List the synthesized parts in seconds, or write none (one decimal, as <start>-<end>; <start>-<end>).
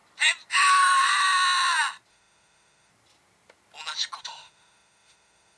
0.5-1.1; 2.1-2.9; 4.2-5.6